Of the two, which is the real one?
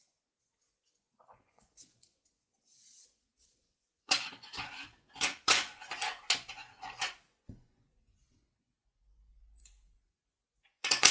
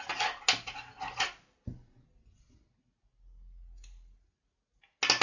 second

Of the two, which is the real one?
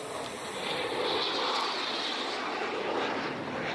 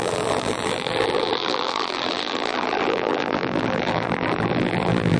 first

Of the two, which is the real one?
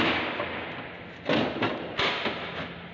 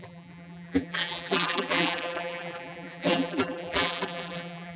first